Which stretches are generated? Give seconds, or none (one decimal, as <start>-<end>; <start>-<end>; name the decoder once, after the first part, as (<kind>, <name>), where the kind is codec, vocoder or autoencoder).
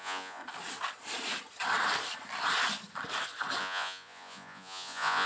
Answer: 0.0-0.4 (vocoder, Vocos); 3.6-5.3